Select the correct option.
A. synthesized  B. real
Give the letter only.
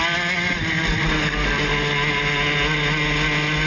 B